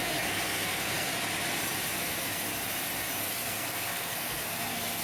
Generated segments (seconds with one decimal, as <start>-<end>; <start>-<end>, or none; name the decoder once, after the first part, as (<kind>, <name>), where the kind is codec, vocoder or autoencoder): 0.0-1.1 (codec, SNAC); 1.9-2.5; 3.2-5.0